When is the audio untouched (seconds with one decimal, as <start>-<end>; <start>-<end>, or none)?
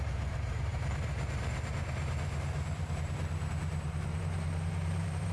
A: none